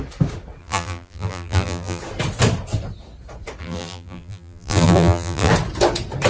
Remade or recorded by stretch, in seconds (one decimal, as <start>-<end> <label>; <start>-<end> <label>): 0.0-0.6 recorded; 0.6-2.0 remade; 2.0-3.6 recorded; 3.6-5.5 remade; 5.5-6.3 recorded